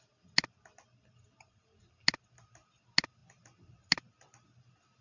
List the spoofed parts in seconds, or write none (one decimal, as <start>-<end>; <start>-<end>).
none